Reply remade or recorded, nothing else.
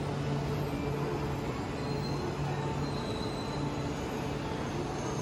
recorded